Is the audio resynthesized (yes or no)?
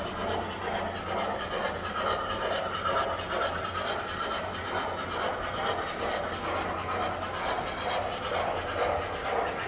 no